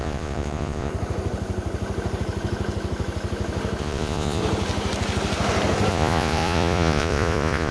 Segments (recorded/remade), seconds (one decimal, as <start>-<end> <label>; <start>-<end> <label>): 0.0-0.9 remade; 0.9-3.8 recorded; 3.8-4.4 remade; 4.4-5.9 recorded; 5.9-7.7 remade